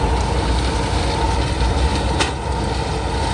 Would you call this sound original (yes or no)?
yes